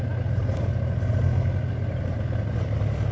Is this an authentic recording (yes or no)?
yes